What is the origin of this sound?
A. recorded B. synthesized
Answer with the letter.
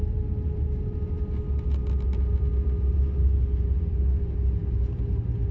A